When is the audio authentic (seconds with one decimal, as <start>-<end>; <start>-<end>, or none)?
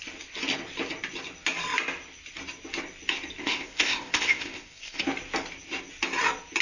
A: 0.0-3.4; 5.0-6.6